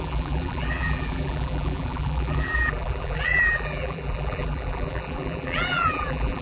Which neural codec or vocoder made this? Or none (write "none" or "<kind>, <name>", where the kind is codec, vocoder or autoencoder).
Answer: vocoder, BigVGAN v2